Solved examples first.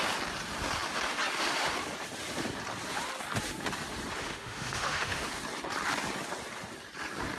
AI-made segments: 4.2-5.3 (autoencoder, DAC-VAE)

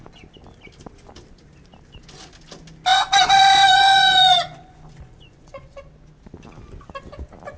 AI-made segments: 2.9-5.9 (vocoder, Vocos)

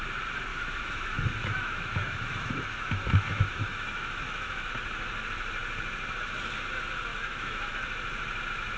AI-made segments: 0.5-4.7 (autoencoder, DAC-VAE); 7.1-7.7

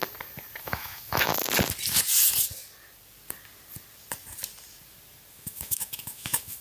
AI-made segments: 0.6-1.3 (autoencoder, DAC-VAE); 5.3-6.6